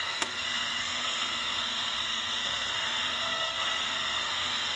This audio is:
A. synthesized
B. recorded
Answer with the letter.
A